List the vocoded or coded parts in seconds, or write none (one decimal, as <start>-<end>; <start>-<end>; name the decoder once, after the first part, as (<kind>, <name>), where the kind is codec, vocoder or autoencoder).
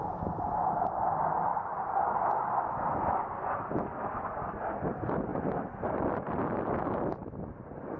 none